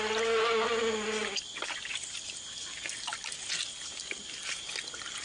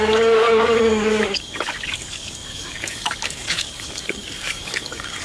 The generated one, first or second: second